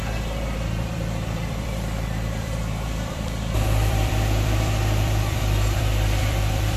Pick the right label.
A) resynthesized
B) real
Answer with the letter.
A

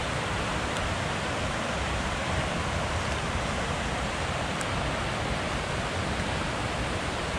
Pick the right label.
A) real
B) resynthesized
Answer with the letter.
A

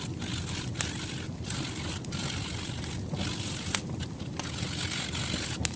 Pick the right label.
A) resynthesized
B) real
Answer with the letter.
B